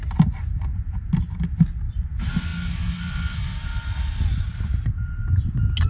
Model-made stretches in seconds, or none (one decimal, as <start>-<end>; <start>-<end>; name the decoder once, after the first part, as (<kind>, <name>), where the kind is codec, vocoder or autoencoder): none

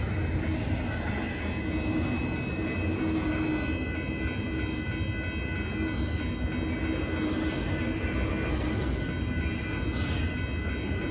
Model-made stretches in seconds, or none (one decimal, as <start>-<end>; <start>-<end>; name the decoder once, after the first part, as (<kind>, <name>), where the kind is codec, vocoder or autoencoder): 8.5-9.0 (codec, SNAC)

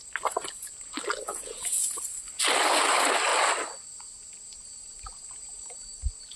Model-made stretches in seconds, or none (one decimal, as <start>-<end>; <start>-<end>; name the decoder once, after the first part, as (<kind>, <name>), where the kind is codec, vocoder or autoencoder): 1.3-1.9 (vocoder, Vocos)

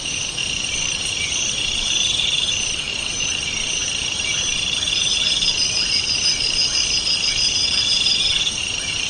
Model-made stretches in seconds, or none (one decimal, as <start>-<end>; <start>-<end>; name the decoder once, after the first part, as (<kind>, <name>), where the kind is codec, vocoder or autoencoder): 0.0-0.4 (vocoder, BigVGAN v2); 1.6-4.5; 5.0-6.6; 7.3-9.1

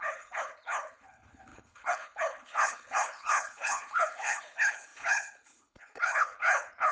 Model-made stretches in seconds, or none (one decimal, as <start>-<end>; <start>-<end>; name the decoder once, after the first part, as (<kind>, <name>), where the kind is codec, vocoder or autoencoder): 0.0-6.9 (codec, HILCodec)

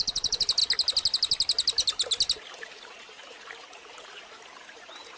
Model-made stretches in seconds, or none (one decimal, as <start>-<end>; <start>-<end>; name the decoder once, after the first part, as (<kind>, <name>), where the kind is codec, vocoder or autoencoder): none